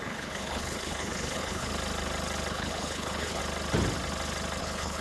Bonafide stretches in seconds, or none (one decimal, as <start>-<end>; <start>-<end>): 1.7-2.5; 3.4-4.6